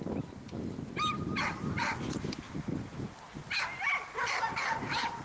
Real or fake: real